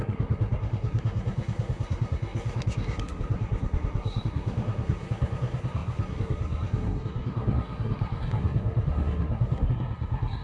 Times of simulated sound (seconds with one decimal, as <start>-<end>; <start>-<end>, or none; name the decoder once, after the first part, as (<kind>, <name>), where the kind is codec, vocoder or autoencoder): 0.0-10.4 (codec, SNAC)